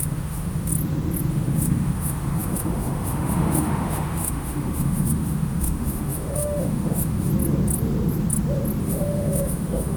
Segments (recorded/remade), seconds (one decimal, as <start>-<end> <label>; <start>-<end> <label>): 0.0-0.7 remade; 0.7-1.3 recorded; 1.3-7.3 remade; 7.3-8.8 recorded; 8.8-10.0 remade